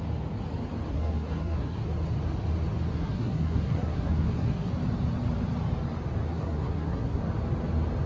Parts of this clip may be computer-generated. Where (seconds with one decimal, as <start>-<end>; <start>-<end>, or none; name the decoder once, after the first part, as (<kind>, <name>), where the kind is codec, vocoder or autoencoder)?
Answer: 0.9-1.8 (codec, SNAC); 2.9-4.7; 6.3-7.3